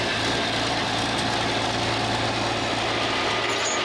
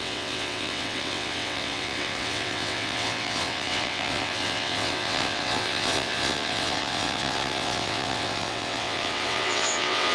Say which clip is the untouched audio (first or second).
first